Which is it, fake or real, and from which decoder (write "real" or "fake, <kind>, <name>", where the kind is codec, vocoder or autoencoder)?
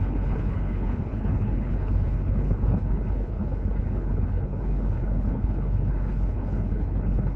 fake, codec, HILCodec